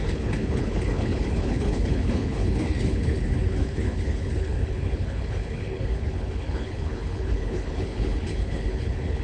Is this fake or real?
fake